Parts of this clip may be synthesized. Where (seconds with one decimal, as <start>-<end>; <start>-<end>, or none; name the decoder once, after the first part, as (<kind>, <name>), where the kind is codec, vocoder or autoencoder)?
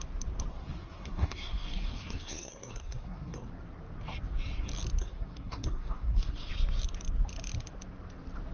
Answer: 0.5-3.5 (codec, SNAC); 5.0-6.5